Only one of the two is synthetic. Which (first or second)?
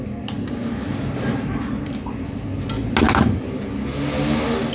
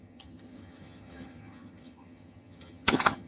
second